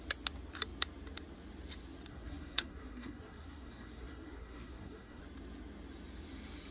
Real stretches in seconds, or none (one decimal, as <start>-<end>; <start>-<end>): 0.0-2.1; 5.2-6.7